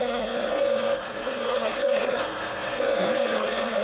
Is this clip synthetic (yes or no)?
yes